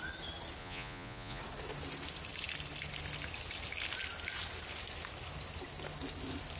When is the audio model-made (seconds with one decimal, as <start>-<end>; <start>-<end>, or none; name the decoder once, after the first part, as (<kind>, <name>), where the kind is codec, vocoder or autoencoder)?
0.6-1.4 (vocoder, Vocos)